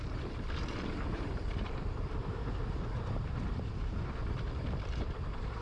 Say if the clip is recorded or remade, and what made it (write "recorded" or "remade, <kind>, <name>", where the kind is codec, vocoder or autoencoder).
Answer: remade, vocoder, BigVGAN v2